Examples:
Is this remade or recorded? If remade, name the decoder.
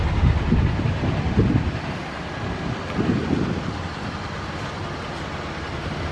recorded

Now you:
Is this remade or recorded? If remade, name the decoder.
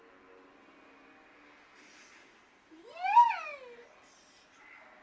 recorded